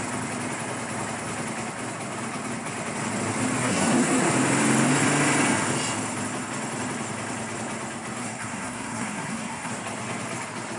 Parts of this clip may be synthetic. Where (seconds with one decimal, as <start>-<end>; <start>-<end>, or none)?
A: 3.6-4.3; 8.2-9.7

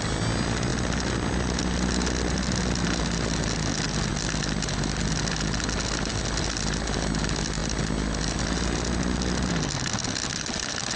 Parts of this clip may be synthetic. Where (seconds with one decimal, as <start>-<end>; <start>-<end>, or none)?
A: none